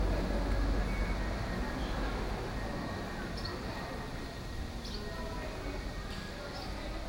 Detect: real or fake real